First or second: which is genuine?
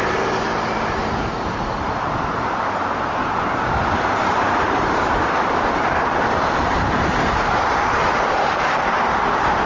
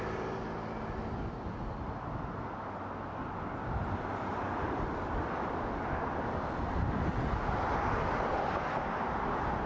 second